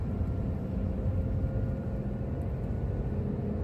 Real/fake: real